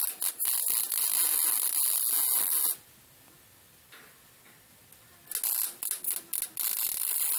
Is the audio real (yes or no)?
yes